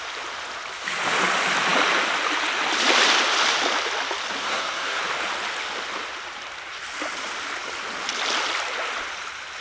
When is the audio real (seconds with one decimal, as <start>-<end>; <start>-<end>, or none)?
0.0-4.4; 5.0-9.6